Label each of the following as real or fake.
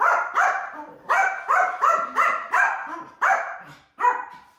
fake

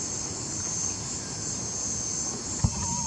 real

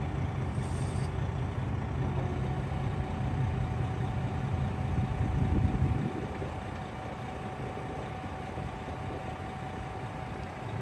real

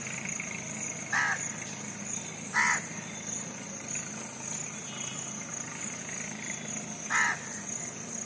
real